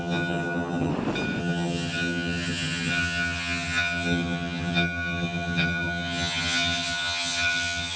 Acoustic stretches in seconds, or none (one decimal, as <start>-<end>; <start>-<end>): 0.9-1.4